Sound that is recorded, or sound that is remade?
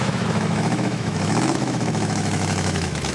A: remade